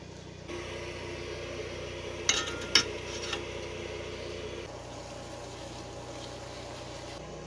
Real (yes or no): yes